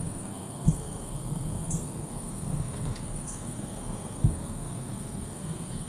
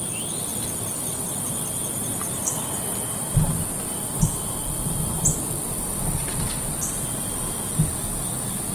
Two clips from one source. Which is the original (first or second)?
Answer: second